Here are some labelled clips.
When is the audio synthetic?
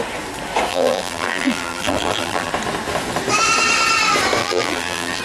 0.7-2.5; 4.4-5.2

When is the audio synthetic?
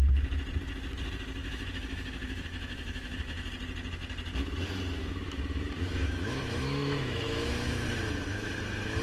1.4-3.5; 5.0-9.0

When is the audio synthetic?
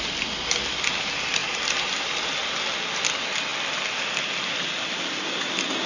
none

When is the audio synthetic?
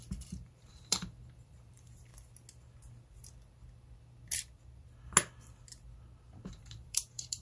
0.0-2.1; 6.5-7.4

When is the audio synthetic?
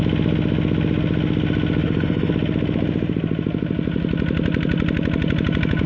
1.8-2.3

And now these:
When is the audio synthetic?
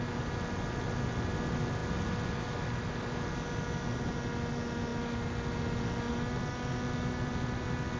none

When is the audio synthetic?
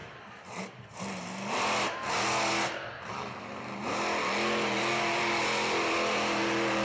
0.0-1.0